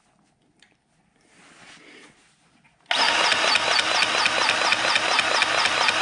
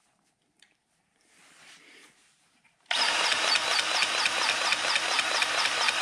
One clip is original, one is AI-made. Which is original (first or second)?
first